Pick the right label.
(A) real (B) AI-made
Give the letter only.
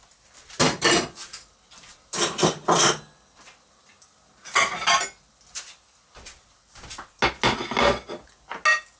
A